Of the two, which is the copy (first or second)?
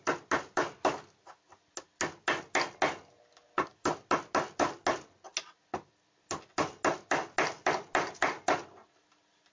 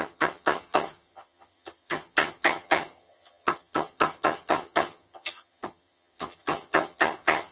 second